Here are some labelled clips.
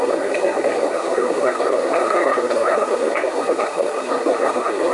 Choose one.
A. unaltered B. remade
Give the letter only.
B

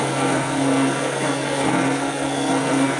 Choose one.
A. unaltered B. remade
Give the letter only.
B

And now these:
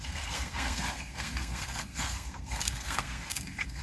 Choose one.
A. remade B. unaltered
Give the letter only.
A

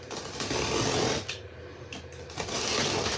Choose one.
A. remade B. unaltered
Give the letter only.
B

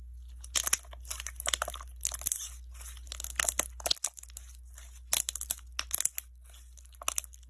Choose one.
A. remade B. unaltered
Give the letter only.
B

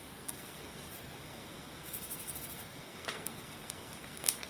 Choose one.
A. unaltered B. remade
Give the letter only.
B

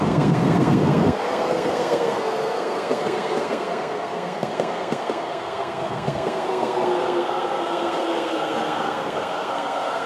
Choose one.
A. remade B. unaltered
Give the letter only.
A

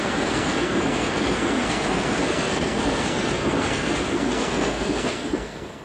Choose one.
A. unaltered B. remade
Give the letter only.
B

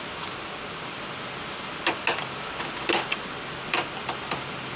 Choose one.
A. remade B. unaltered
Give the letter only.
B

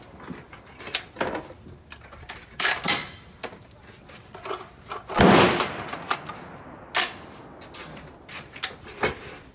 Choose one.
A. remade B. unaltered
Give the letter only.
B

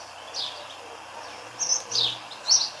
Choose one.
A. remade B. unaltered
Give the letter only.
B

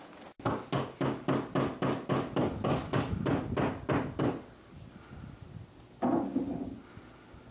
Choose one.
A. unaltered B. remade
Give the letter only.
A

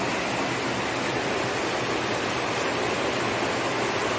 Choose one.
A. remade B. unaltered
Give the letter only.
B